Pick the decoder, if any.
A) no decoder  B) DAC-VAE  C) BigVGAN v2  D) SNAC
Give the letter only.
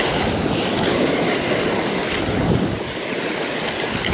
A